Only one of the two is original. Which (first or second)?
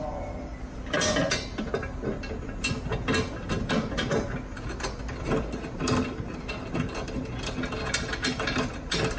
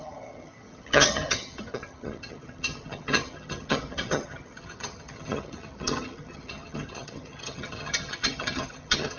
first